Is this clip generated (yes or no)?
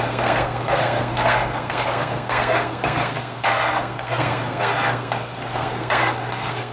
yes